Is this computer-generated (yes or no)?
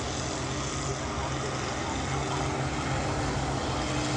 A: no